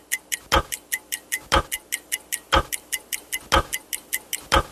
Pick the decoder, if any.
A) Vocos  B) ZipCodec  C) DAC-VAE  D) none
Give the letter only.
D